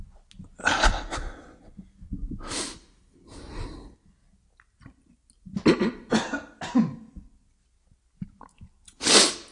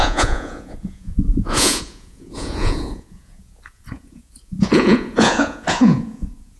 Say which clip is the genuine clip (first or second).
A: first